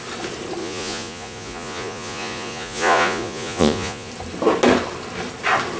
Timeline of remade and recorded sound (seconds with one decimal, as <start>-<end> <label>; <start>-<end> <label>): 0.0-0.6 recorded; 0.6-4.1 remade; 4.1-5.8 recorded